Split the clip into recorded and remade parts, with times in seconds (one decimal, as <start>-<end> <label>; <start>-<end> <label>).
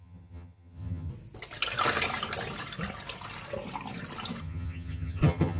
0.0-1.1 remade; 1.1-4.4 recorded; 4.4-5.6 remade